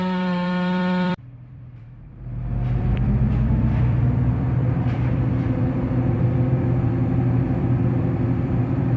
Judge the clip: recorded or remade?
remade